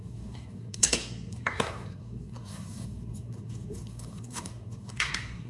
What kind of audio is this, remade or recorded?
remade